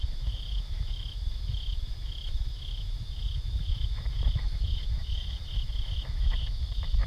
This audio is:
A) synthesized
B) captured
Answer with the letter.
A